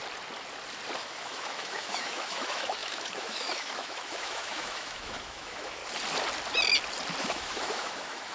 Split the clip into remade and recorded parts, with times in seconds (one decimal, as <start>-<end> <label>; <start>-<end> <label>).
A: 0.0-1.0 recorded; 1.0-5.8 remade; 5.8-7.2 recorded; 7.2-8.3 remade